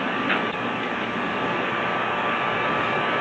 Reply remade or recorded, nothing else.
remade